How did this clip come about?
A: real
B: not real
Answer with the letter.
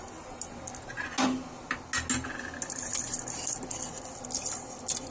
A